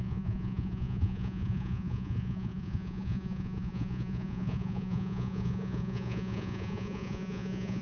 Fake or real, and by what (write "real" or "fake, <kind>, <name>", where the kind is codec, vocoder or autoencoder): fake, vocoder, Vocos